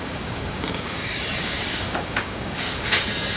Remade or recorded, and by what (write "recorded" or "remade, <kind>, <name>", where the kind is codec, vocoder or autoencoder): remade, codec, DAC